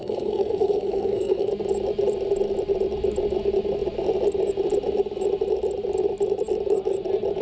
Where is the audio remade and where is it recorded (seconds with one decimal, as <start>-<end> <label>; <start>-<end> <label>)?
0.0-1.5 remade; 1.5-7.4 recorded